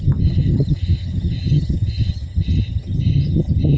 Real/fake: fake